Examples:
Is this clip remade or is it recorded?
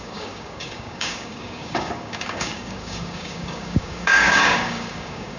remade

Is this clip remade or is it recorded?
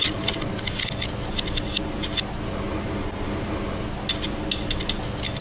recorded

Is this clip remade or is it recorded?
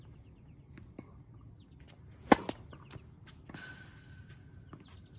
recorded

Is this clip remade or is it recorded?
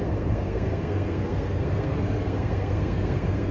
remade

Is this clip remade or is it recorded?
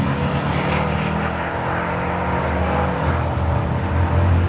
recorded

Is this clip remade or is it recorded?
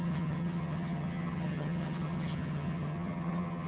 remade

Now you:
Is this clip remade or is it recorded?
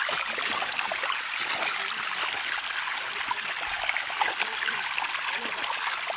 recorded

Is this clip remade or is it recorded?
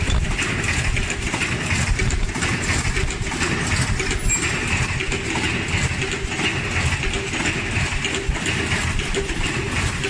recorded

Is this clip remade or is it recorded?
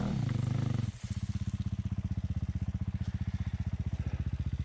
recorded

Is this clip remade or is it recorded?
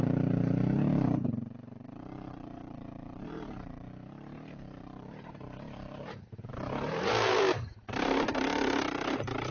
remade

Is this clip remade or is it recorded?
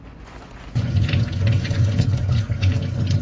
remade